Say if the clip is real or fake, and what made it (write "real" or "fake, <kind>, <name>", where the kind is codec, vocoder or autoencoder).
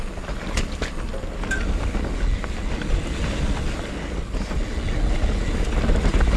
real